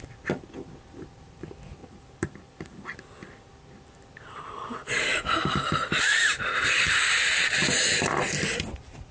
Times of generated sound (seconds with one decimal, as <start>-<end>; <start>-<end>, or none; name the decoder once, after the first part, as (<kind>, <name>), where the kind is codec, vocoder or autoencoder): 1.8-3.1 (vocoder, BigVGAN v2); 5.1-5.7

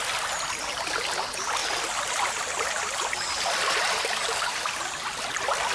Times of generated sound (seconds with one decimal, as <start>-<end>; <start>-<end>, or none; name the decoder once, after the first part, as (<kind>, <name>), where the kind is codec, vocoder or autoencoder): none

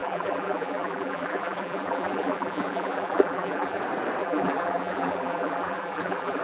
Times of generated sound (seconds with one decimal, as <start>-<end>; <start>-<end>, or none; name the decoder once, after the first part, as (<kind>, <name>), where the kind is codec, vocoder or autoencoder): 0.0-3.8 (vocoder, BigVGAN v2); 4.2-6.4